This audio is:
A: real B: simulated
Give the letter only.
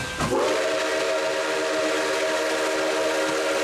A